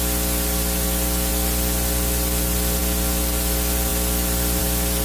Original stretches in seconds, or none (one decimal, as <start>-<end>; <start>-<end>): 0.0-5.0